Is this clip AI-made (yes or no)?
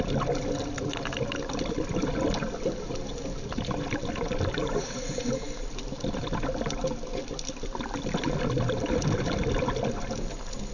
no